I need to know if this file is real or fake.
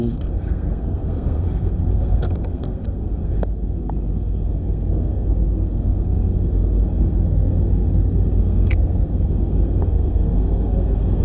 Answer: fake